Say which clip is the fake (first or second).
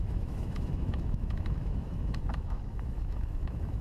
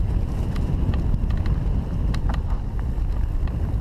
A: first